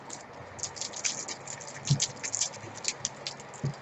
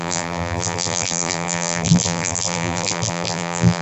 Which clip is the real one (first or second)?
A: first